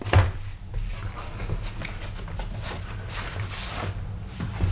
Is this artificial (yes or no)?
no